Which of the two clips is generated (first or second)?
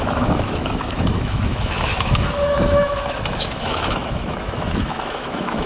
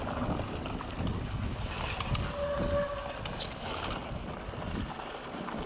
first